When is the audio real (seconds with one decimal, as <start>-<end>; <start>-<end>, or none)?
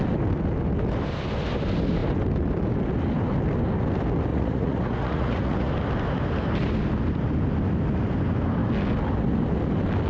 0.0-4.3; 5.7-10.1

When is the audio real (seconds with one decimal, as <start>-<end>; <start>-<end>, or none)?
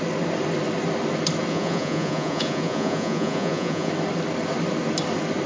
0.0-1.5; 3.9-5.5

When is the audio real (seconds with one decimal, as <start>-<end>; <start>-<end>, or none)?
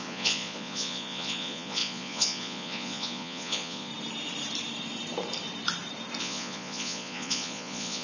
3.9-6.2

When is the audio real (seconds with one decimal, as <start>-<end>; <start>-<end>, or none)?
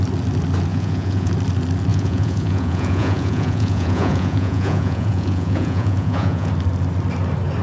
0.0-0.7; 1.3-1.9; 6.5-7.6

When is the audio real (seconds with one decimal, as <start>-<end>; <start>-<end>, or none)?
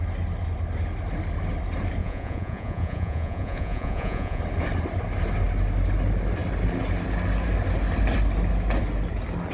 0.0-2.0; 4.4-9.5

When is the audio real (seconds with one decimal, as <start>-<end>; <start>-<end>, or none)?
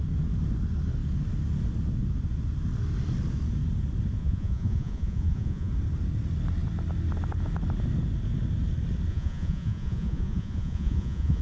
0.0-4.2; 5.7-9.1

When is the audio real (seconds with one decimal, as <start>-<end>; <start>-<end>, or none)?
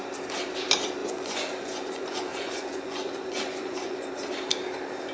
0.0-1.0; 4.1-5.1